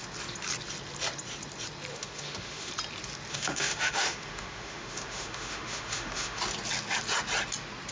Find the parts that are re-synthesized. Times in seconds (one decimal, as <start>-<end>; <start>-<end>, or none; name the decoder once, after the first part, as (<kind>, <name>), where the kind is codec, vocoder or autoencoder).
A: 1.9-2.7 (autoencoder, DAC-VAE); 3.3-6.4